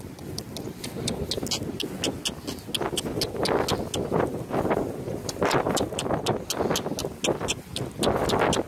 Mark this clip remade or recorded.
recorded